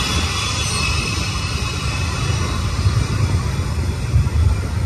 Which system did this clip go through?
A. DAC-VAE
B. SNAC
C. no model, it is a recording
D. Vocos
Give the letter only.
C